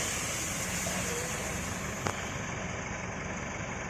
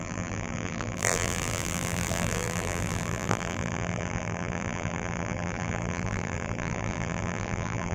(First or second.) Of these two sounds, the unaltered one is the first